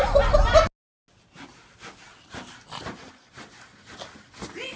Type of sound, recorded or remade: recorded